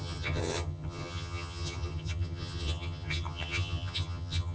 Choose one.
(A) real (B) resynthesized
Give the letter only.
B